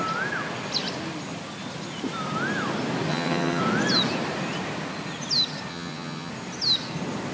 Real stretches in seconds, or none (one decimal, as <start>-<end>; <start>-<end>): 0.0-3.1; 3.6-5.7; 6.3-7.3